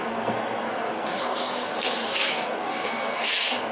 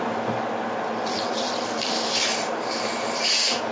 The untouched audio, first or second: second